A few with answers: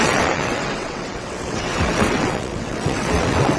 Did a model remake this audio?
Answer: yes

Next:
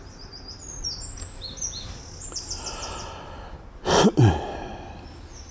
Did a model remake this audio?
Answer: no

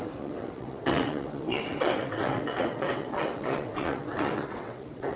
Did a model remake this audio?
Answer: yes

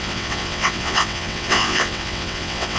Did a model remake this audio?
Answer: yes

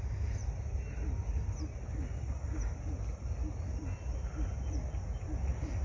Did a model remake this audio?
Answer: no